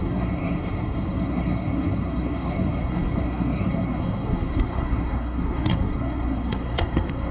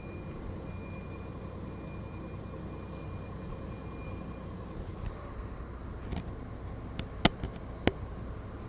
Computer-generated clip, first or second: first